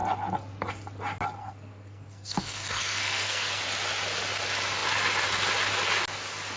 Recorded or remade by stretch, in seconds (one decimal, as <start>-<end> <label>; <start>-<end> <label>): 0.0-1.4 recorded; 1.4-3.6 remade; 3.6-6.6 recorded